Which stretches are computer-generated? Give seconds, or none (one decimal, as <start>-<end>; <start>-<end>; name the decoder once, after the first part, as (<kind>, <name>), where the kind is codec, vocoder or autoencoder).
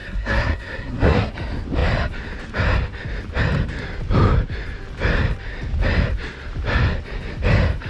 0.0-1.3 (codec, SNAC)